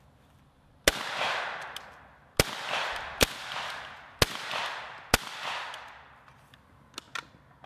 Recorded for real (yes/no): yes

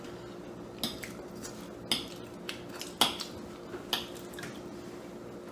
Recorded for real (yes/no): yes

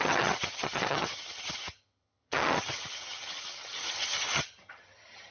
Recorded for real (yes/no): no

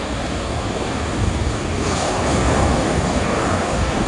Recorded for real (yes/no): no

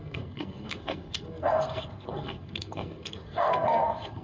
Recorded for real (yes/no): no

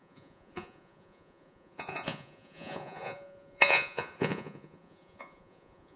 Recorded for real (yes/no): no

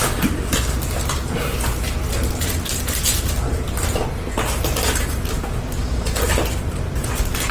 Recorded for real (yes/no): yes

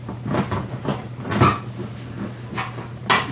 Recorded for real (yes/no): yes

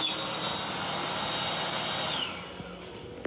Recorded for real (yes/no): yes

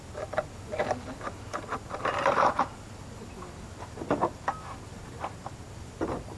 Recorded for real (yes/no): yes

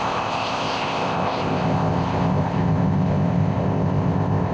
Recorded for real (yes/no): no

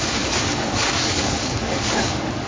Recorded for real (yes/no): no